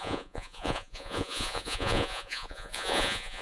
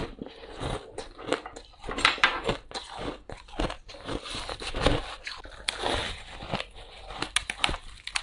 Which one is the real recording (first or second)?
second